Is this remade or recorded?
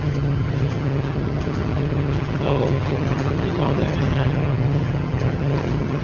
remade